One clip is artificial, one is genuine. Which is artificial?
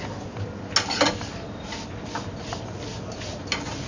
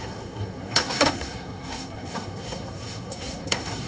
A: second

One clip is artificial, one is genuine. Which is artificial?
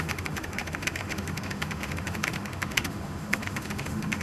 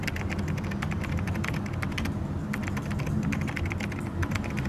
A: first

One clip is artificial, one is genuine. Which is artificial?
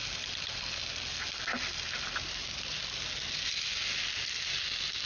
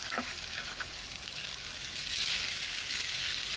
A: second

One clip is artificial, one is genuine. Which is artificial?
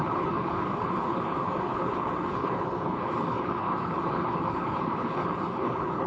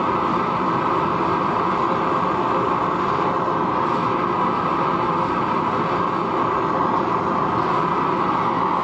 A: first